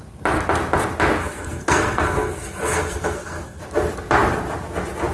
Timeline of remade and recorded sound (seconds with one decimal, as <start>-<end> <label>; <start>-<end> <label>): 0.0-1.2 recorded; 1.2-3.6 remade; 3.6-5.1 recorded